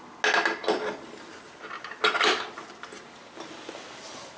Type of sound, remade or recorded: recorded